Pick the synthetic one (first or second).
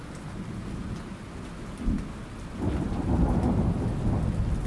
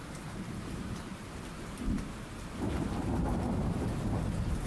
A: second